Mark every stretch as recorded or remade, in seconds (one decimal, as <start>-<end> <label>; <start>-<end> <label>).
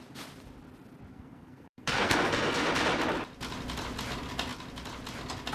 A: 0.0-1.1 recorded; 1.1-2.7 remade; 2.7-5.5 recorded